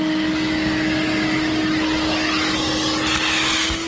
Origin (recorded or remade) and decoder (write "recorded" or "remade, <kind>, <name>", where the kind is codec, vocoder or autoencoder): recorded